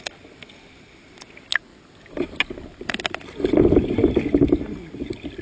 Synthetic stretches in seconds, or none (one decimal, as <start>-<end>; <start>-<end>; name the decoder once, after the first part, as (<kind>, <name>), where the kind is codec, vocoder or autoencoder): none